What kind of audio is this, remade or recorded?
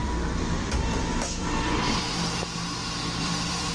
remade